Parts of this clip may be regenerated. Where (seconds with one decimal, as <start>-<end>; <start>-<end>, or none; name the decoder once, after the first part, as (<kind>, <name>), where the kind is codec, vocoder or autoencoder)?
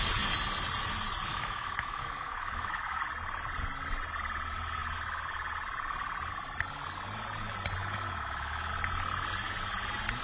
1.3-3.0 (autoencoder, DAC-VAE); 7.8-8.7